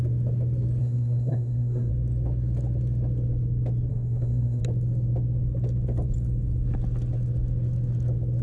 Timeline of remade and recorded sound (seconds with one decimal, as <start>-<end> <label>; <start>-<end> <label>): 0.0-0.8 recorded; 0.8-1.9 remade; 1.9-3.9 recorded; 3.9-4.6 remade; 4.6-8.4 recorded